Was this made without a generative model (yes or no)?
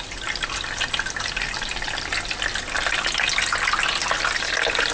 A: yes